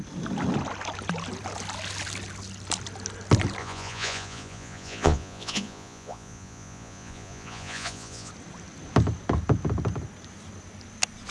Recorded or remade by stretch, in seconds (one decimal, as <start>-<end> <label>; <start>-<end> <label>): 0.0-3.6 recorded; 3.6-8.3 remade; 8.3-11.3 recorded